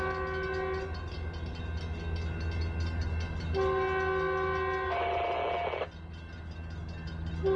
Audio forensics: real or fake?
real